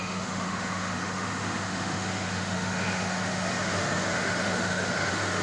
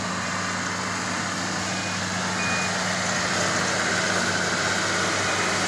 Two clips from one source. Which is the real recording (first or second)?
second